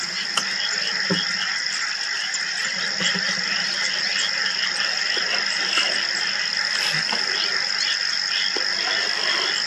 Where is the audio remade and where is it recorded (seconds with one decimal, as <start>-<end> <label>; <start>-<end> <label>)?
0.0-2.6 recorded; 2.6-3.8 remade; 3.8-9.7 recorded